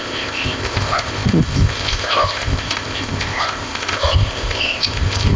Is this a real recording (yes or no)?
no